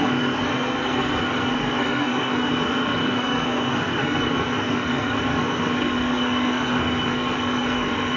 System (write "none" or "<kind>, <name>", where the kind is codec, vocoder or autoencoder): codec, SNAC